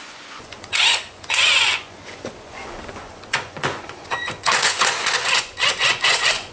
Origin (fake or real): fake